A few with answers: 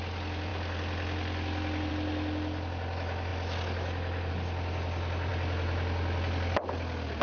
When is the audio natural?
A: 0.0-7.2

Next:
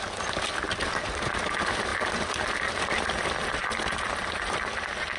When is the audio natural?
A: 0.0-1.9